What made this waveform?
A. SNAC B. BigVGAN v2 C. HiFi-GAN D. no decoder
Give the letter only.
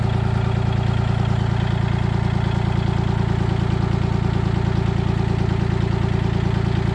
D